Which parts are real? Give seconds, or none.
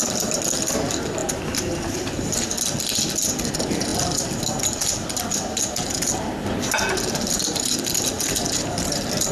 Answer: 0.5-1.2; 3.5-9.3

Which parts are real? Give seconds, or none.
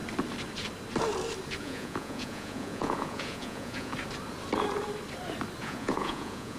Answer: 0.0-1.6; 3.9-5.6